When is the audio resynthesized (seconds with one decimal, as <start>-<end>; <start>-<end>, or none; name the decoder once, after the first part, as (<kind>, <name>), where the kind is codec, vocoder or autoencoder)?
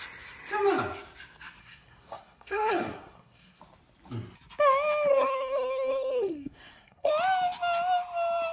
1.6-3.6 (codec, SNAC); 5.1-7.1